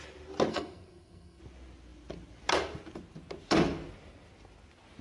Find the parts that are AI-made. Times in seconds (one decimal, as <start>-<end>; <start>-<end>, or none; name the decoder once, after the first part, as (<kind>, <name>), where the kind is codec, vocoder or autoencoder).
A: 0.5-1.4 (codec, SNAC)